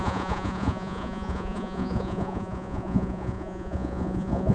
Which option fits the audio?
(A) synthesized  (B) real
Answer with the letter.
A